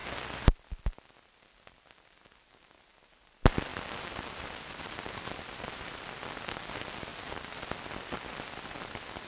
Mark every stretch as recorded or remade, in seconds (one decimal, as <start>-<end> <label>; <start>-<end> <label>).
0.0-3.7 recorded; 3.7-6.0 remade; 6.0-7.1 recorded; 7.1-7.6 remade; 7.6-9.3 recorded